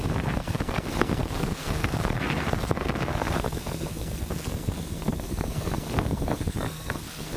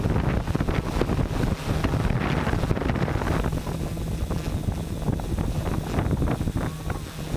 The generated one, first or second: first